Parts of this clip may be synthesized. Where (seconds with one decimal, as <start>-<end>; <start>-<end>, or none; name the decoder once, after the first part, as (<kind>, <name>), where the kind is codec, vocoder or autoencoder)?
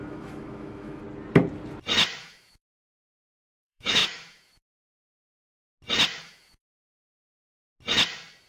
0.0-1.0 (autoencoder, DAC-VAE); 2.2-5.2; 6.2-7.5